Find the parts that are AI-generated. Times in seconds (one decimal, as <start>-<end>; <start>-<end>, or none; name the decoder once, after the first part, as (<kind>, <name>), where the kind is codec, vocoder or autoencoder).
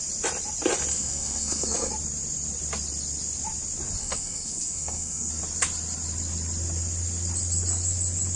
0.9-1.9 (codec, SNAC); 4.0-5.3